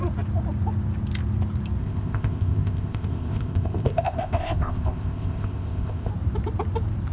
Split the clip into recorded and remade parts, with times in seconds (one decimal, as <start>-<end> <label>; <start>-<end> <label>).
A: 0.0-1.8 recorded; 1.8-6.1 remade; 6.1-7.1 recorded